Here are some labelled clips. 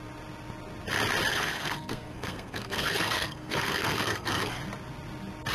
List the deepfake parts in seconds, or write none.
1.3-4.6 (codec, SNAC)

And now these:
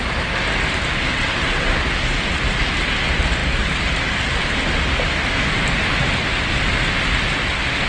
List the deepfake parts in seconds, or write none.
1.1-1.7 (vocoder, WaveNeXt)

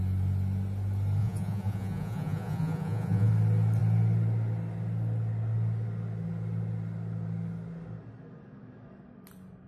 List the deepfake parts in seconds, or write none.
1.2-3.3 (vocoder, Vocos)